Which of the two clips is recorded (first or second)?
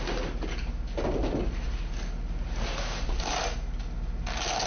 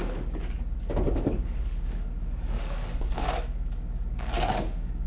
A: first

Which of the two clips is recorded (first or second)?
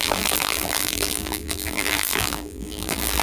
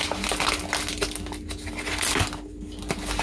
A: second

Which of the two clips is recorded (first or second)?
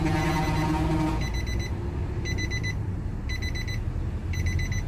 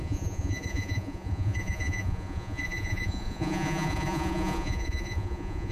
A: first